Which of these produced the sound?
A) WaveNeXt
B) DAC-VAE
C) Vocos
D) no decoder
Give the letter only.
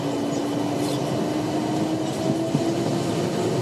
D